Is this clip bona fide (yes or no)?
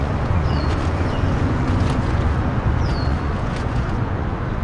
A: no